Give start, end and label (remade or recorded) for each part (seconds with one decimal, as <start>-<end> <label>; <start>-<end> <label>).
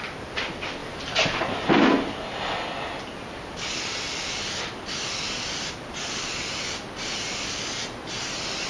0.0-8.7 recorded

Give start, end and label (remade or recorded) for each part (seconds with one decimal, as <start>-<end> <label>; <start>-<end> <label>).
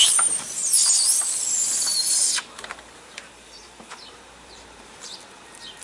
0.0-0.6 remade; 0.6-2.5 recorded; 2.5-5.8 remade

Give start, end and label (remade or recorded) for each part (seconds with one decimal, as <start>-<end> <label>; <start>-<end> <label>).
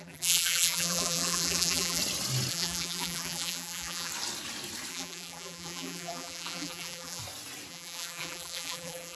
0.0-2.0 remade; 2.0-2.5 recorded; 2.5-4.1 remade; 4.1-4.9 recorded; 4.9-7.2 remade; 7.2-7.7 recorded; 7.7-9.2 remade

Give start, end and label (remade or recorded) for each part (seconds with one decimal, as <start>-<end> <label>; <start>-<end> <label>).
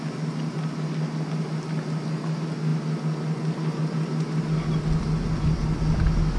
0.0-6.4 recorded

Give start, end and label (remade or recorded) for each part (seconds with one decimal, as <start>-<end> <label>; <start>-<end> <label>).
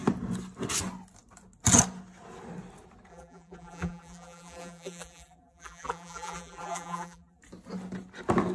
0.0-3.1 recorded; 3.1-7.4 remade; 7.4-8.5 recorded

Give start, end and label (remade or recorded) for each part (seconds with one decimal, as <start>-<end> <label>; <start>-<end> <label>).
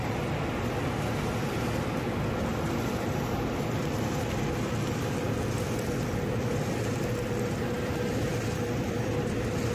0.0-2.5 recorded; 2.5-5.2 remade; 5.2-8.3 recorded; 8.3-9.7 remade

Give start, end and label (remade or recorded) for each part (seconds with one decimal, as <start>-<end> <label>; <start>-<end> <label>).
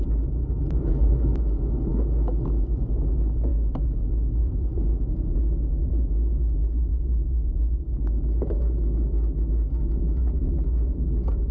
0.0-4.4 recorded; 4.4-4.9 remade; 4.9-11.5 recorded